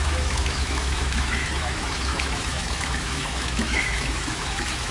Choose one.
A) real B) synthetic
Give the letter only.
B